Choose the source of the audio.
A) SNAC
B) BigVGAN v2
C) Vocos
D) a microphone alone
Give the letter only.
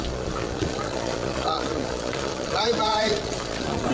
C